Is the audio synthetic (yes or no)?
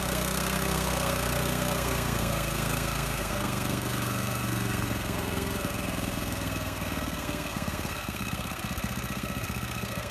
yes